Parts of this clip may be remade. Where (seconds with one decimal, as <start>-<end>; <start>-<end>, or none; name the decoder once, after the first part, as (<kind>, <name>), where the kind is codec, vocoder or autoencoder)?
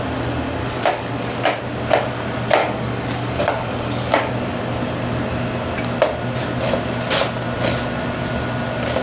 0.6-1.6 (codec, DAC); 2.6-4.3